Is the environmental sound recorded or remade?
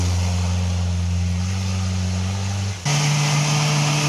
recorded